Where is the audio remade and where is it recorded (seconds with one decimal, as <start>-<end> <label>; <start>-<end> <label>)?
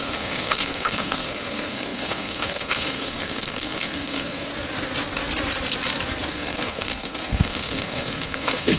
0.0-4.5 remade; 4.5-6.3 recorded; 6.3-8.8 remade